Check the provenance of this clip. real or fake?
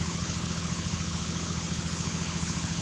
fake